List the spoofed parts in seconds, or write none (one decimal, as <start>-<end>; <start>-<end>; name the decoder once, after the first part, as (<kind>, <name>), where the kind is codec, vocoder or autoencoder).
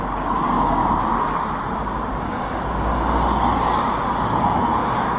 0.0-0.8 (codec, DAC); 1.8-2.9; 4.0-5.2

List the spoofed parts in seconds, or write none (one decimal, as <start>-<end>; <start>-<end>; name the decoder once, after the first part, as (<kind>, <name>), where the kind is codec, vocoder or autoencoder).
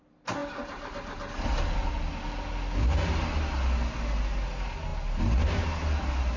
none